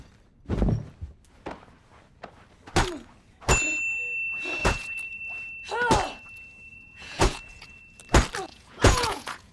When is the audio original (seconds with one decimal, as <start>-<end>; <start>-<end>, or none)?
0.0-4.6; 5.2-6.7; 7.8-8.5